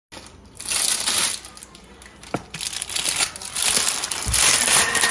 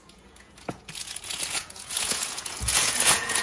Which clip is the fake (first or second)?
second